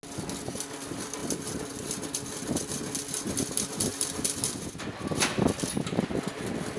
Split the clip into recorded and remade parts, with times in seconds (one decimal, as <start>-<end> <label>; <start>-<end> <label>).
0.0-6.8 recorded